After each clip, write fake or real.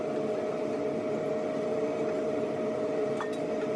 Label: real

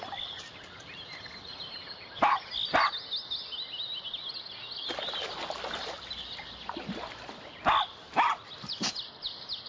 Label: real